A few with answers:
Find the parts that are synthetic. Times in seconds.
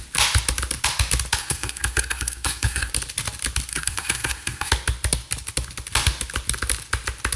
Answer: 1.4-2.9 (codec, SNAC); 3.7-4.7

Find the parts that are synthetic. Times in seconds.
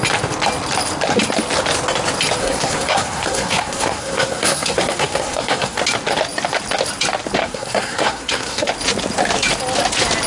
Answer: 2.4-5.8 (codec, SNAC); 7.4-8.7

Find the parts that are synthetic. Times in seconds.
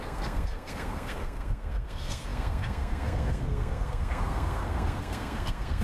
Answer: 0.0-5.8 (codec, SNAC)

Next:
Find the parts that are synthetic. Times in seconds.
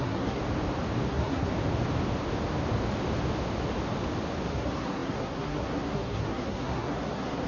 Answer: 0.0-0.4 (codec, SNAC); 1.1-1.5; 4.5-7.5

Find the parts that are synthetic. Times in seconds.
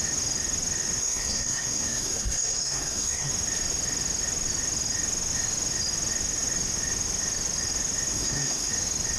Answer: 1.0-3.3 (codec, SNAC); 8.1-8.7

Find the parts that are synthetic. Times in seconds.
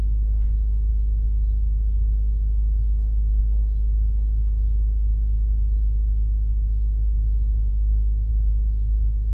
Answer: 7.7-8.3 (codec, SNAC)